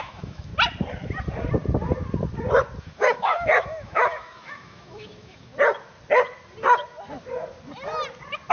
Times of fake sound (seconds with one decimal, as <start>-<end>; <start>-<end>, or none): 0.0-0.5; 2.8-5.5